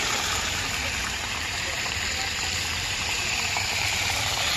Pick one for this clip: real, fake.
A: fake